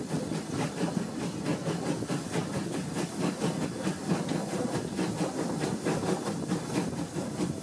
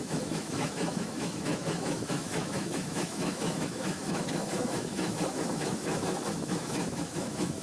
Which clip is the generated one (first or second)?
second